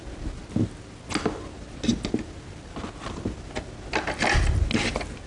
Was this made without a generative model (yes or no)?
yes